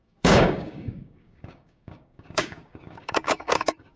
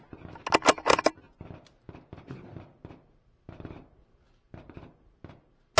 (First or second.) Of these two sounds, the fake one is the first